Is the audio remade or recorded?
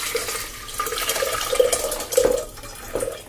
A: recorded